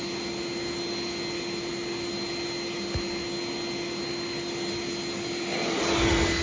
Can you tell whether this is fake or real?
real